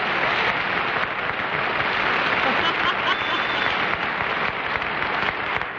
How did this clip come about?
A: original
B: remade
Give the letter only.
A